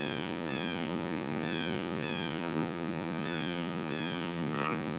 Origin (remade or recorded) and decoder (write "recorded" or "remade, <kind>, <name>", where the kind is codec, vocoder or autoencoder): remade, vocoder, Vocos